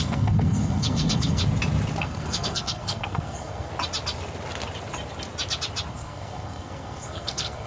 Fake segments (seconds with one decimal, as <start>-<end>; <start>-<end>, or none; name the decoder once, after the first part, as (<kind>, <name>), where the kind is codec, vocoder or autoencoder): 0.0-1.4 (codec, SNAC); 2.0-3.7; 5.9-7.7